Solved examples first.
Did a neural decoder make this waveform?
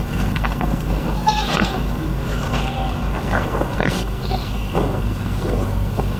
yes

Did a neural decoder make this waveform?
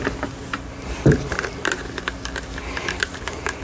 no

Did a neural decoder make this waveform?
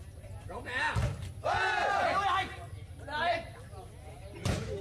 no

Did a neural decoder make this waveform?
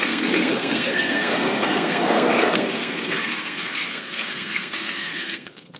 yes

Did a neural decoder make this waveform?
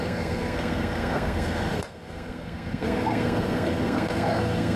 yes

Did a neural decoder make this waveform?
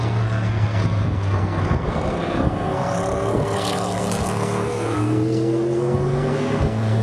yes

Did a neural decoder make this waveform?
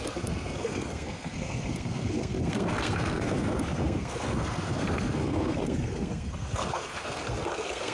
yes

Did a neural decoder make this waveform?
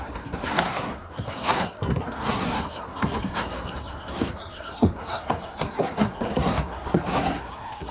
yes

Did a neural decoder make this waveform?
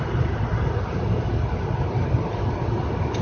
no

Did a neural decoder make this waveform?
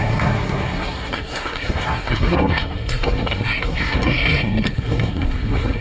yes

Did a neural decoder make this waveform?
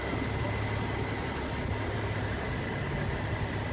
no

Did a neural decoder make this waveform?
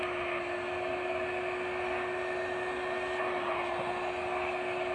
no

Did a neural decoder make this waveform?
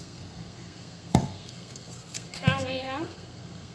yes